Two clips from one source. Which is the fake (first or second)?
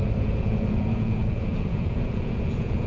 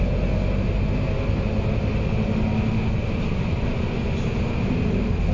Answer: first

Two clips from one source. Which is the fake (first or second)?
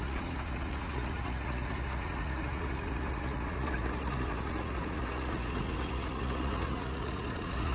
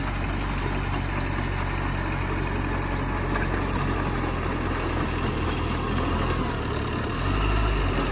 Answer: first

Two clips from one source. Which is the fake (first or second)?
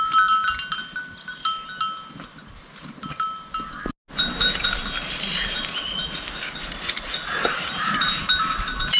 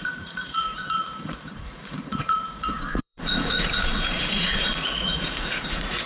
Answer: second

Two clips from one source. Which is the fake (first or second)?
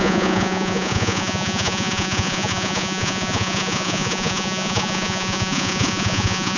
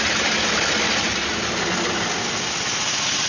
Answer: first